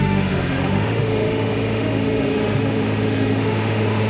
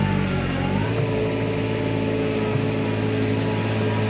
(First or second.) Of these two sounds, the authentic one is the second